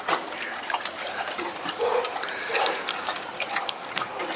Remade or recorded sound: remade